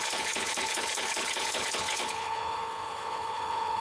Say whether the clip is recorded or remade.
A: remade